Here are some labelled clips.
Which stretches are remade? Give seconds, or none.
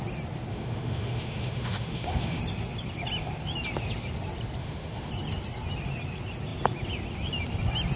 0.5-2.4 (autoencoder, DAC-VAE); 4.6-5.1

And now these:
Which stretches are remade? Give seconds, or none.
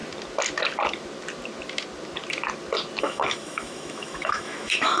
3.0-5.0 (autoencoder, DAC-VAE)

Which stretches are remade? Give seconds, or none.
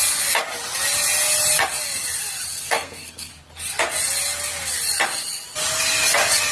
2.5-3.3 (codec, SNAC)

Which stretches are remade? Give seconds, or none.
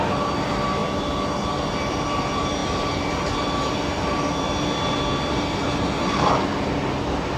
none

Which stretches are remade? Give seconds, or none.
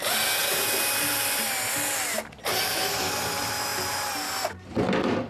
none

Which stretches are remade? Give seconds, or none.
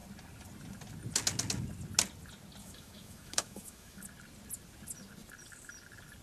2.6-4.0 (autoencoder, DAC-VAE)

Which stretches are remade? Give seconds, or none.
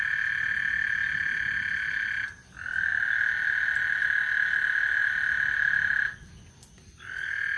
2.9-4.0 (vocoder, BigVGAN v2); 5.0-6.7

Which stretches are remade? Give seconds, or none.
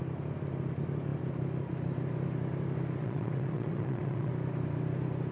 3.0-4.3 (vocoder, Vocos)